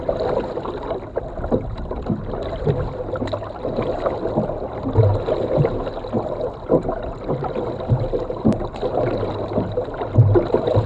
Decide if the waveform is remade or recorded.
recorded